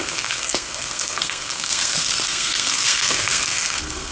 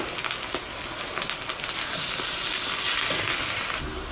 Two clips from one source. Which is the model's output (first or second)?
first